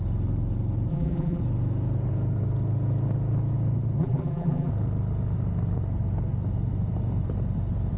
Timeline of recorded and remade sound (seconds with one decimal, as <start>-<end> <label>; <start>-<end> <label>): 0.0-0.9 recorded; 0.9-1.4 remade; 1.4-4.0 recorded; 4.0-4.7 remade; 4.7-8.0 recorded